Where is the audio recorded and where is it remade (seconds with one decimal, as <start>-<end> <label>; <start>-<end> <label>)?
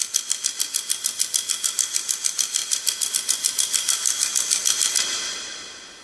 0.0-6.0 recorded